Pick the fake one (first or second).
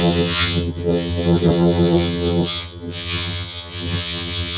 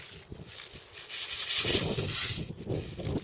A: first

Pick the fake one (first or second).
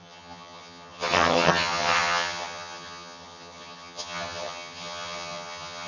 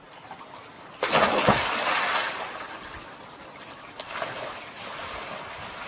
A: first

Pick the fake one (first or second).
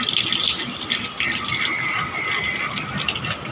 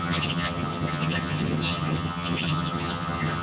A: second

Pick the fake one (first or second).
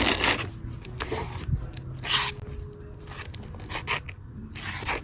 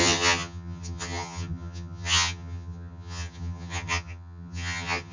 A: second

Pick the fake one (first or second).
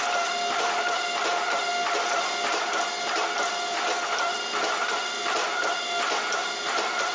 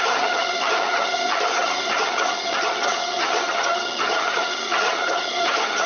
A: second